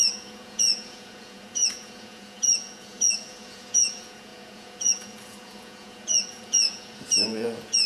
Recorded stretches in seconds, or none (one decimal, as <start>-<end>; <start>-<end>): none

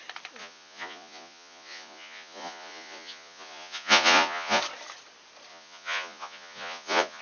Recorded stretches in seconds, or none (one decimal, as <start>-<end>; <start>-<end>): 0.0-0.4; 4.6-5.5

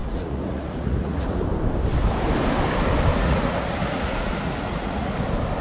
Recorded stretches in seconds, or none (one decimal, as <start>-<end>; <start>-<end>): 1.4-3.1; 5.1-5.6

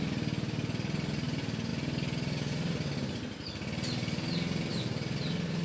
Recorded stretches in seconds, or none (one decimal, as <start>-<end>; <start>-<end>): 0.0-5.6